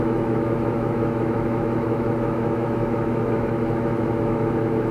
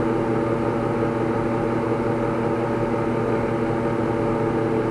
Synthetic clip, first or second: first